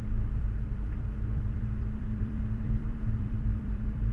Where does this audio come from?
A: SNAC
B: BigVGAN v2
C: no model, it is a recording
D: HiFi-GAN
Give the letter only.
B